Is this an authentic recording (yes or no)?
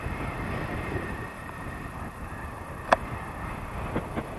yes